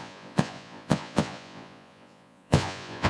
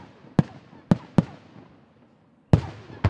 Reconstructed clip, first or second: first